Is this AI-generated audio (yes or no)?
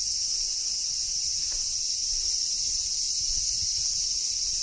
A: no